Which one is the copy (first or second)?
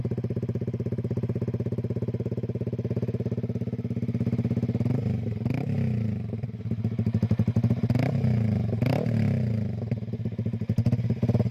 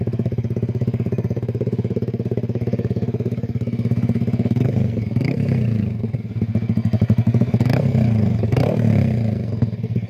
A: second